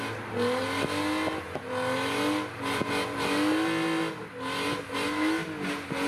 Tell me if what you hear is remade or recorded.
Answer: recorded